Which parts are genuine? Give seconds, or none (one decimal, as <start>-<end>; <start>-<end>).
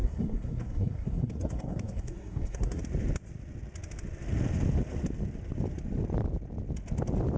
2.8-7.4